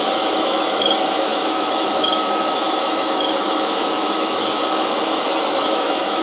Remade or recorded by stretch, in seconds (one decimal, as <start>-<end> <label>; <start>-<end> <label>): 0.0-6.2 remade